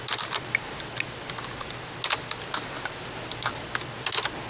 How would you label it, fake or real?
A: real